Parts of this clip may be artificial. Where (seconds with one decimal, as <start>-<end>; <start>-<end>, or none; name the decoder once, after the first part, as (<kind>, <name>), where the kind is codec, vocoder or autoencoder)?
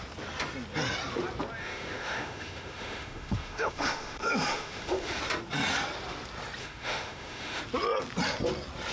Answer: 1.6-5.2 (autoencoder, DAC-VAE); 6.6-7.6